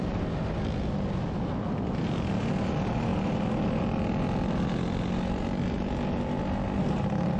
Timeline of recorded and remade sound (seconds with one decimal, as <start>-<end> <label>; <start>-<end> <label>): 0.0-7.4 recorded